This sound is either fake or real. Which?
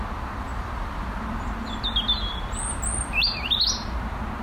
real